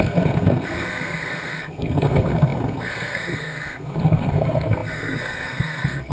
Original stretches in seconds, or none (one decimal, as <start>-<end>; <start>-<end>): none